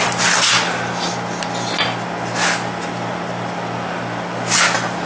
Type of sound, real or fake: real